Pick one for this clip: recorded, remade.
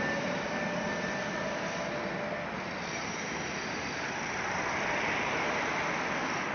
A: remade